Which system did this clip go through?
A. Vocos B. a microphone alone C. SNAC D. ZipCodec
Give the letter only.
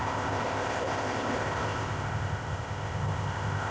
D